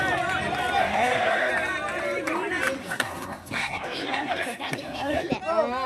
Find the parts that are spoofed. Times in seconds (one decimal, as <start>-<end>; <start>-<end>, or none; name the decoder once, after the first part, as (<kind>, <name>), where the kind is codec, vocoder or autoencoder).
0.8-1.5 (codec, SNAC); 2.8-5.3